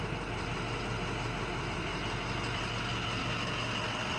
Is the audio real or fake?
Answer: real